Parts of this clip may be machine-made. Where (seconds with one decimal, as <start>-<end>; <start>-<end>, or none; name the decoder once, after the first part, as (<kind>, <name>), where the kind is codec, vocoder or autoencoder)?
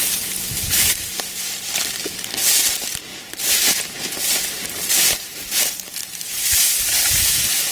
3.1-7.7 (vocoder, BigVGAN v2)